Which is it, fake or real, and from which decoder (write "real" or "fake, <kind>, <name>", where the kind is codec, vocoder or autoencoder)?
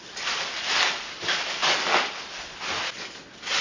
real